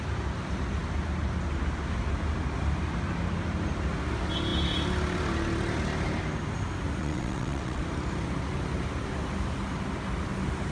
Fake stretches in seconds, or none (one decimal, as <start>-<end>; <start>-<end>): 7.0-7.8